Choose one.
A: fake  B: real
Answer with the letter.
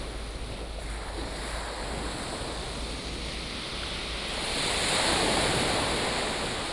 B